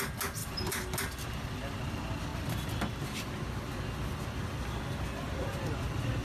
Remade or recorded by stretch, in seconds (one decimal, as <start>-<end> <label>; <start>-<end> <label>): 0.0-6.2 recorded